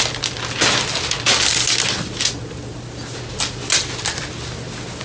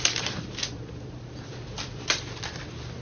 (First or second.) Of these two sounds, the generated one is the second